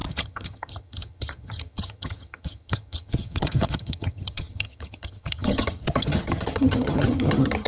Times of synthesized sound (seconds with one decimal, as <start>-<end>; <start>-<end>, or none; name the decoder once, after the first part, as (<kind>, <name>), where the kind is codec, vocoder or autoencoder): 0.0-7.7 (vocoder, HiFi-GAN)